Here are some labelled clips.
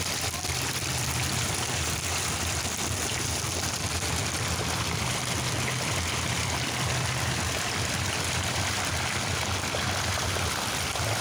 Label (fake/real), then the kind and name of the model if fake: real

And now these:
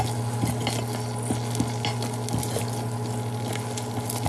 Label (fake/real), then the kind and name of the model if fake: real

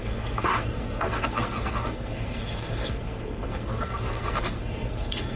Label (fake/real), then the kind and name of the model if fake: fake, codec, SNAC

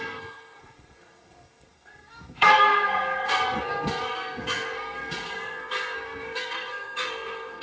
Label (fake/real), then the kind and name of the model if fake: fake, codec, SNAC